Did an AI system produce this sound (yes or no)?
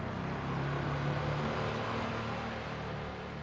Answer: no